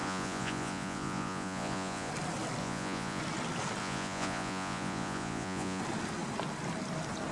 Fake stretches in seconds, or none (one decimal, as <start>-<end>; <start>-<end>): 0.0-2.1; 2.6-3.2; 3.8-5.8